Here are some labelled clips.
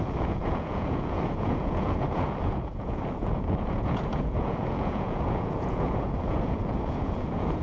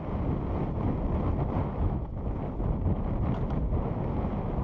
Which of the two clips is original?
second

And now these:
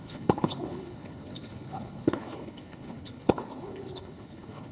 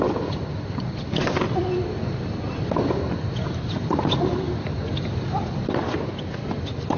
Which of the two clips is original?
second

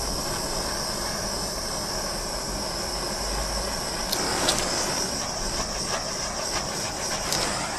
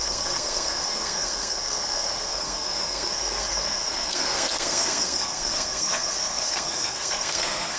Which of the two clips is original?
first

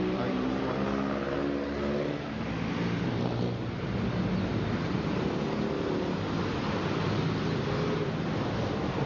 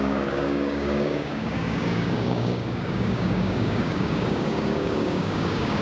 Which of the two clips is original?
first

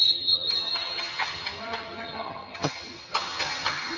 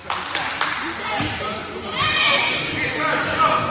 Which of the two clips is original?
second